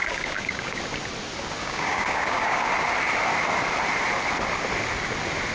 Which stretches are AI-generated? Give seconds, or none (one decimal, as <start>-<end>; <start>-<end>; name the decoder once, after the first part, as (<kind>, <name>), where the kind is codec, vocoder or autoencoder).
0.0-0.8 (codec, DAC); 1.6-2.6